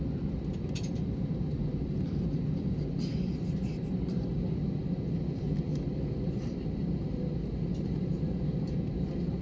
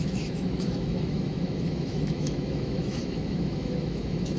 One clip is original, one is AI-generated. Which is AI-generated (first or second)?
second